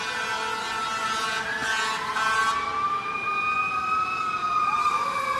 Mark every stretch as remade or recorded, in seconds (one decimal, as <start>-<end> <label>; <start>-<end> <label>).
0.0-5.4 recorded